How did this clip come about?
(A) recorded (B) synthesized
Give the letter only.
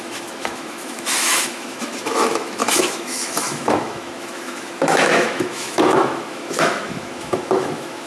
B